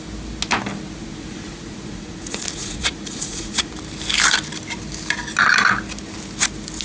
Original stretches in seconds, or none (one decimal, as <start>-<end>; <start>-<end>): 0.0-1.0; 3.7-6.8